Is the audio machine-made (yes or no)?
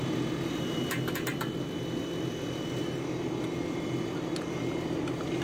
no